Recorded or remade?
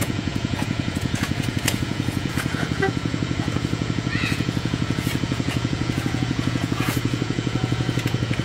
remade